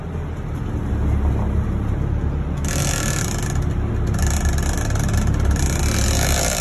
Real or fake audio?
real